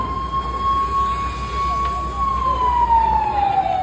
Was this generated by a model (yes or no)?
no